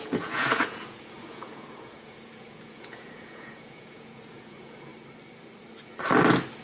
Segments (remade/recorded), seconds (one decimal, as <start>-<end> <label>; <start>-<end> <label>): 0.0-4.9 remade; 4.9-6.6 recorded